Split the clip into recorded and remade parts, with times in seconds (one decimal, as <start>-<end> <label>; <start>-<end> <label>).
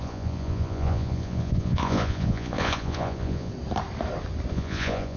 0.0-3.5 remade; 3.5-4.5 recorded; 4.5-5.2 remade